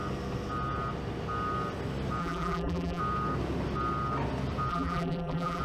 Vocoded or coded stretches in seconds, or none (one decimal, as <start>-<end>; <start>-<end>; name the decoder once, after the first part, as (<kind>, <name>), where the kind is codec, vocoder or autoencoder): 2.2-3.0 (vocoder, BigVGAN v2); 4.7-5.6